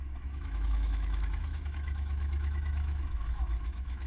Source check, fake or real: fake